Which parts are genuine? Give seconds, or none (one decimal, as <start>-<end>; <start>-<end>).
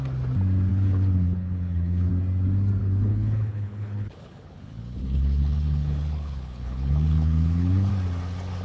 0.0-0.7; 2.1-2.8; 7.9-8.6